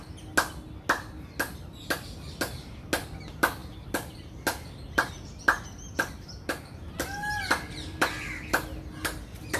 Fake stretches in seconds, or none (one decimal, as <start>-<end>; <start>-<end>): none